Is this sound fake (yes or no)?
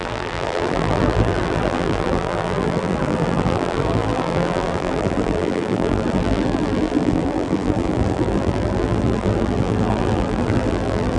yes